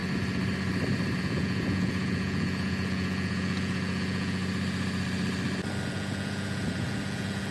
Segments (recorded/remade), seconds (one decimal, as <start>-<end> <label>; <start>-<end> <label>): 0.0-1.2 recorded; 1.2-4.4 remade; 4.4-5.9 recorded; 5.9-7.5 remade